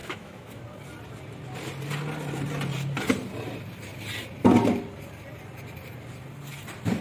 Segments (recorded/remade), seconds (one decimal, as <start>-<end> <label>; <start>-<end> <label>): 0.0-0.6 remade; 0.6-7.0 recorded